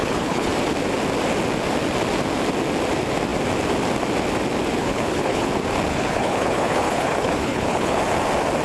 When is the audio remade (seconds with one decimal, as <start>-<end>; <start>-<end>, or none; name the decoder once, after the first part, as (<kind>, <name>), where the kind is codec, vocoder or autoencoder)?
0.0-0.5 (codec, HILCodec); 4.8-5.5; 5.9-8.0